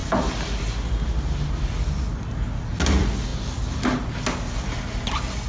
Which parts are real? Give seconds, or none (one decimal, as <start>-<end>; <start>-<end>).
0.0-5.5